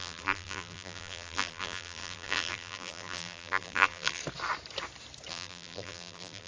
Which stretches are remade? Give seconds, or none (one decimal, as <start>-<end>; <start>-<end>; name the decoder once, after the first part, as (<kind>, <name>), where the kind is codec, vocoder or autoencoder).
0.0-4.2 (vocoder, BigVGAN v2); 5.3-6.5